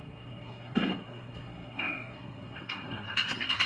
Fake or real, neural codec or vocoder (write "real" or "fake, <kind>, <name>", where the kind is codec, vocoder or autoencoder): fake, codec, SNAC